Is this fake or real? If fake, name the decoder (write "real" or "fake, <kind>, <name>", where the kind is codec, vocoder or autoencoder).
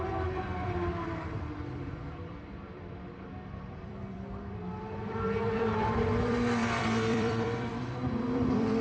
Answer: fake, vocoder, BigVGAN v2